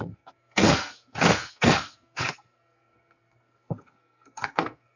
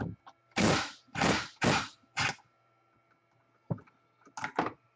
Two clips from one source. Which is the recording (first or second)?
second